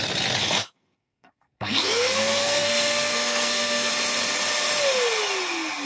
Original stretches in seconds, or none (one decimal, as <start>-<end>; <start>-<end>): 0.0-0.4; 3.9-5.9